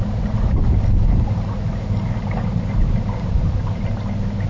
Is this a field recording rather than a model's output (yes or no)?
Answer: yes